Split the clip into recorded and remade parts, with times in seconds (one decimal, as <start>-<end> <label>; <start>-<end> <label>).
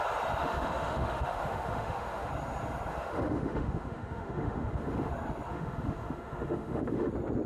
0.0-0.4 recorded; 0.4-2.3 remade; 2.3-2.9 recorded; 2.9-5.1 remade; 5.1-5.5 recorded; 5.5-7.1 remade; 7.1-7.5 recorded